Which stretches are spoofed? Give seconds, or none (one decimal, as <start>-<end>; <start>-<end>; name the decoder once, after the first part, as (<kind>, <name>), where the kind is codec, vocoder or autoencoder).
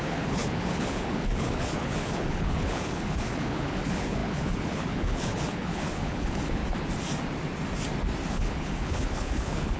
0.0-6.6 (codec, HILCodec); 8.3-9.8